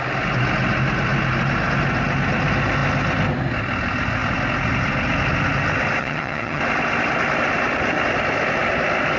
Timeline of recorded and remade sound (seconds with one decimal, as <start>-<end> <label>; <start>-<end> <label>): 0.0-6.0 recorded; 6.0-6.6 remade; 6.6-9.2 recorded